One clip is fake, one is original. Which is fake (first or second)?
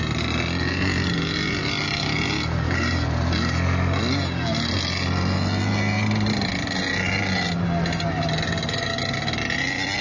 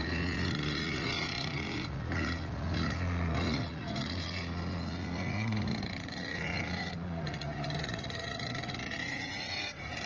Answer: second